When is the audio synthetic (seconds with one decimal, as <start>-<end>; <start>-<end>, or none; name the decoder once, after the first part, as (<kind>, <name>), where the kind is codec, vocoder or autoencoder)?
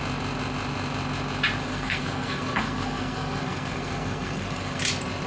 1.6-4.8 (codec, SNAC)